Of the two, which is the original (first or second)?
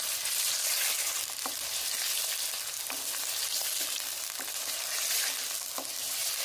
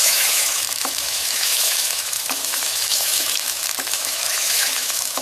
first